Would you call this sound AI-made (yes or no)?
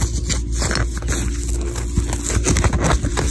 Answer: no